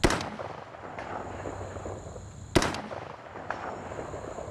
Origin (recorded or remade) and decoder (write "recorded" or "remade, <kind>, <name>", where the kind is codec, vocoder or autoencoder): recorded